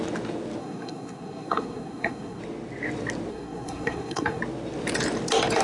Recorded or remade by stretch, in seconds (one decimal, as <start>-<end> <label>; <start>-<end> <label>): 0.0-0.6 recorded; 0.6-2.4 remade; 2.4-3.3 recorded; 3.3-4.4 remade; 4.4-5.6 recorded